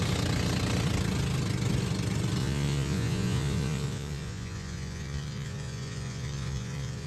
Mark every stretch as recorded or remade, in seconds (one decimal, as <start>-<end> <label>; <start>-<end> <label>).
0.0-2.4 recorded; 2.4-7.1 remade